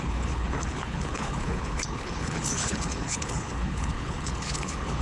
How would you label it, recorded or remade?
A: remade